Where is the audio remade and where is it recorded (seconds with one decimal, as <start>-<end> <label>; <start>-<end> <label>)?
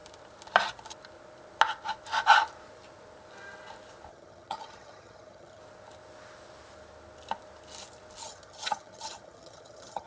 0.0-4.1 recorded; 4.1-5.6 remade; 5.6-8.2 recorded; 8.2-10.1 remade